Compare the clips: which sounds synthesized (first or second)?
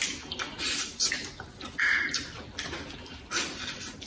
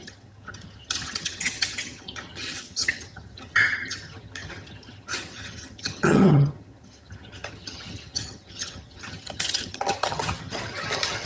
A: second